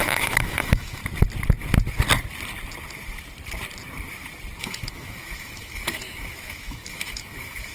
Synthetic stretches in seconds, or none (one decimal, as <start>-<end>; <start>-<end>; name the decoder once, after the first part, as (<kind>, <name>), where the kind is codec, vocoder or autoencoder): 0.0-1.0 (autoencoder, DAC-VAE); 4.6-7.7